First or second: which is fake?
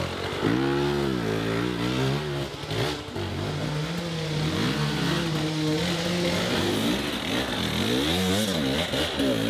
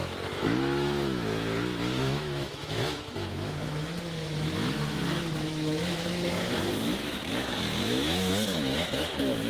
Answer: second